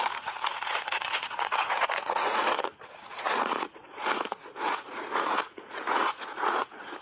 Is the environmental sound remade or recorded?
remade